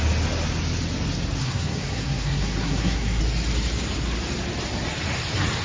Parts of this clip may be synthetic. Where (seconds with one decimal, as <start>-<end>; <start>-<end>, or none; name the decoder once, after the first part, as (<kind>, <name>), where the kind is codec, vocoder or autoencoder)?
1.4-3.2 (codec, SNAC)